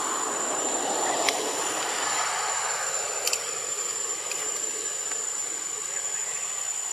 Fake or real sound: real